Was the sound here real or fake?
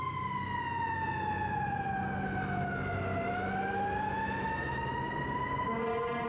real